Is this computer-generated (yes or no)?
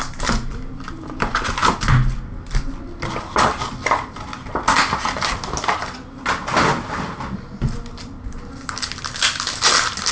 no